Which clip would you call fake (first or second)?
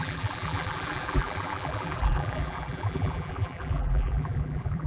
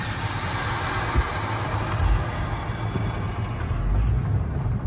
first